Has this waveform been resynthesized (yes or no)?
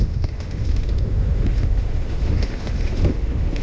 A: yes